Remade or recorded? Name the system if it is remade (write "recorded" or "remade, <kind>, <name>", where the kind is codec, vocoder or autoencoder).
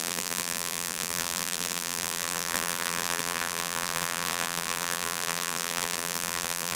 remade, vocoder, BigVGAN v2